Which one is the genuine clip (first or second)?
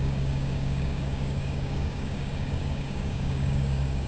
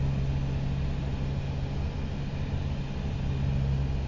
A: second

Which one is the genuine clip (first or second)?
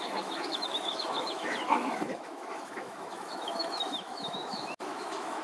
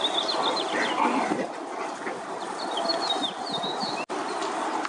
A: second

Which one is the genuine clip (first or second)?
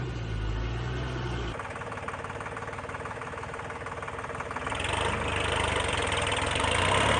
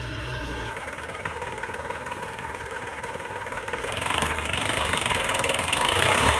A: first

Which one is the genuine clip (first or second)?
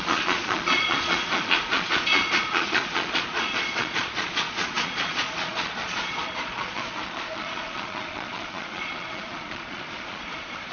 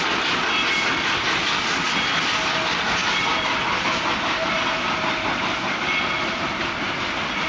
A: second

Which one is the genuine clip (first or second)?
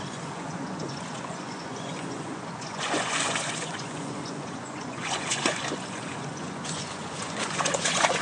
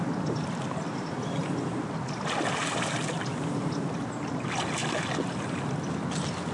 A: second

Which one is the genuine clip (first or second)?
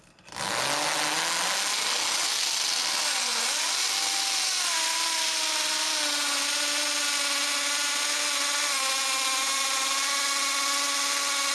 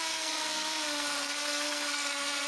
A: first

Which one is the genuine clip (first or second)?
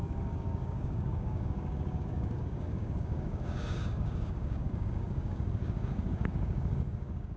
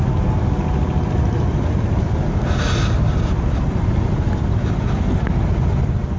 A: second